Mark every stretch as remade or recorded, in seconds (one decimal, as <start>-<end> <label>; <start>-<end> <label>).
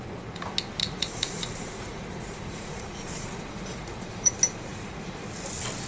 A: 0.0-0.8 recorded; 0.8-4.3 remade; 4.3-4.7 recorded; 4.7-5.2 remade; 5.2-5.9 recorded